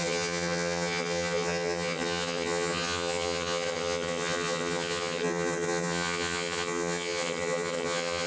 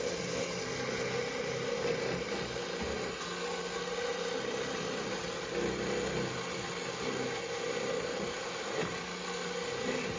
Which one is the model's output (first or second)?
first